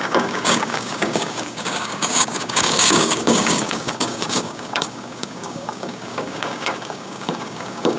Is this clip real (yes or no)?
no